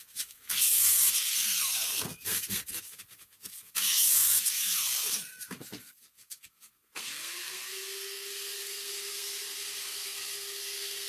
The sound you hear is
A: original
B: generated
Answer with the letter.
B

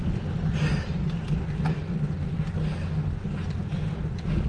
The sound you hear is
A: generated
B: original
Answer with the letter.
B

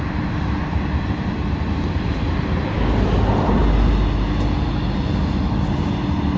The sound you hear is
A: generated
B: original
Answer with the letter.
B